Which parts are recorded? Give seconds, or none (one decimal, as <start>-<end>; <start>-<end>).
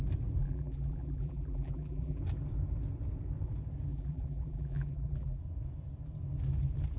0.0-0.4; 2.2-3.9; 5.4-7.0